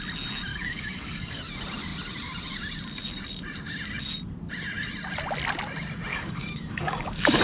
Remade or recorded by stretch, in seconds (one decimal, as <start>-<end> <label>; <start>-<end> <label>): 0.0-0.5 recorded; 0.5-1.4 remade; 1.4-6.1 recorded; 6.1-7.4 remade